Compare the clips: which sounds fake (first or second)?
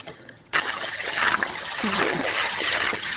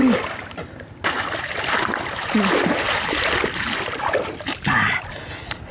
first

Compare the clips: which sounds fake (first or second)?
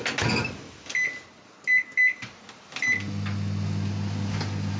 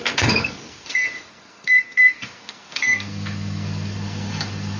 second